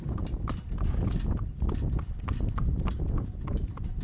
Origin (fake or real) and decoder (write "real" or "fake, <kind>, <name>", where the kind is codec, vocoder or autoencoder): real